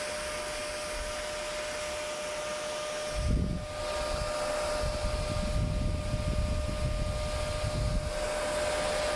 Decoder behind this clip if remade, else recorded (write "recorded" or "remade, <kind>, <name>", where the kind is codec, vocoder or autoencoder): recorded